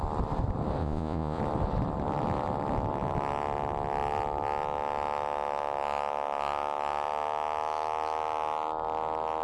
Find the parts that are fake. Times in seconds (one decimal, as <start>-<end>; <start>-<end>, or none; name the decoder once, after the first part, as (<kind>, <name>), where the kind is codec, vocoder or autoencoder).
0.8-1.4 (vocoder, Vocos)